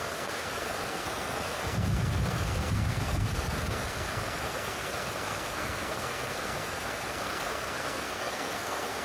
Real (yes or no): no